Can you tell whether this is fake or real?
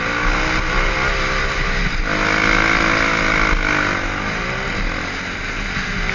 real